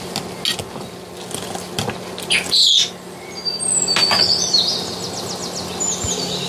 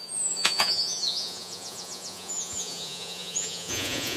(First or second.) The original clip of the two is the first